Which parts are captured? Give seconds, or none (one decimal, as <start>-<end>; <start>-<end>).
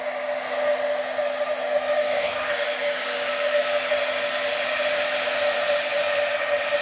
0.0-1.9; 3.9-6.8